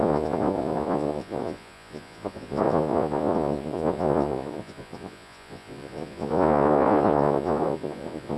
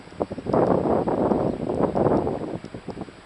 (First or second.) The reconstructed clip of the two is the first